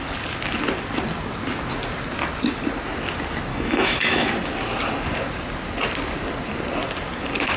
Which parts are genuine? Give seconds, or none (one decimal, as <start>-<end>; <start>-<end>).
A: 0.0-3.5; 4.3-7.6